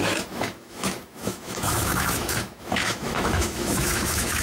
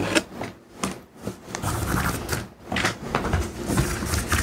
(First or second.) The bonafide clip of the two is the second